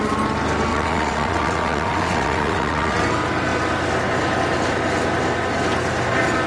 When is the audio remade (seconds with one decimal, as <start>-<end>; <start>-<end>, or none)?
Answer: 0.7-3.0